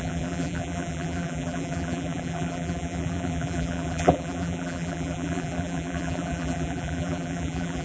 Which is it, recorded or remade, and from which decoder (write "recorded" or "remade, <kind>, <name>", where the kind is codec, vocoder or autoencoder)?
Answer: remade, vocoder, BigVGAN v2